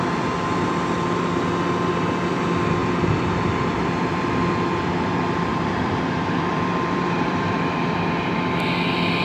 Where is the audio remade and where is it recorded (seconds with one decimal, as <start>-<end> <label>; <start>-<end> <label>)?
0.0-5.5 recorded; 5.5-8.1 remade; 8.1-9.2 recorded